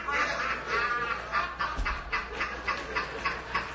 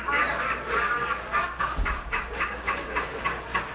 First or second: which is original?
first